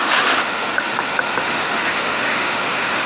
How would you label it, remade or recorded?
remade